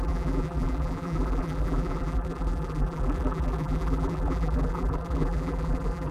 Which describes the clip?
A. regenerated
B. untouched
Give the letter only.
A